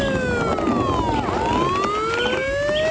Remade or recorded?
recorded